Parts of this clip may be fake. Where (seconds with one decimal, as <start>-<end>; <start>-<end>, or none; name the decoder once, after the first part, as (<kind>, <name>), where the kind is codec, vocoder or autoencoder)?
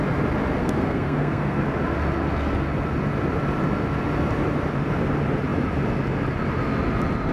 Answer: 0.6-1.6 (codec, SNAC)